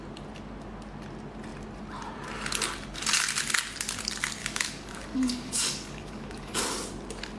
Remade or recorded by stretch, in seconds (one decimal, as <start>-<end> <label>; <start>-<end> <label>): 0.0-4.4 recorded; 4.4-6.6 remade; 6.6-7.4 recorded